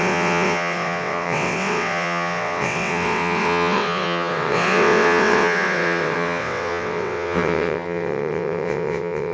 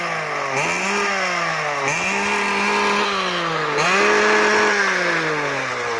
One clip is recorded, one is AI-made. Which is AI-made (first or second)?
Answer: first